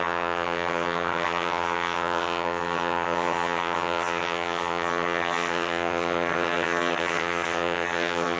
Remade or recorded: remade